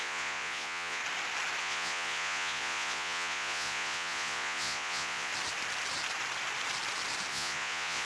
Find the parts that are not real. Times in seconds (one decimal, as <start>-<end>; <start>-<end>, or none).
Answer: 0.0-1.0; 1.6-5.3; 7.3-8.0